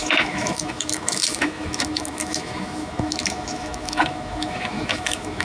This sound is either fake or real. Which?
fake